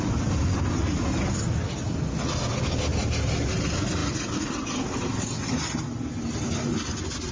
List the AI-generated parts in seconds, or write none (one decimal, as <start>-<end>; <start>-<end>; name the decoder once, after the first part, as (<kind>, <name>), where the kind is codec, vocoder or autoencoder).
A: none